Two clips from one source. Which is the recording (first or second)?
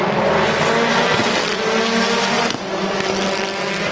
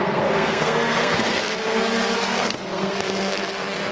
first